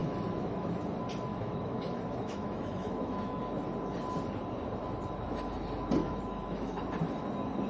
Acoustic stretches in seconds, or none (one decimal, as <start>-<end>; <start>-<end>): 0.8-1.3; 3.4-6.0; 6.8-7.7